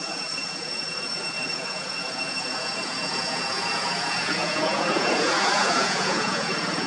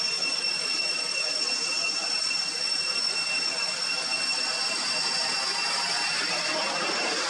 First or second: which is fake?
first